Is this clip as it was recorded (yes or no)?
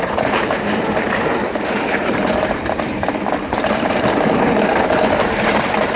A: no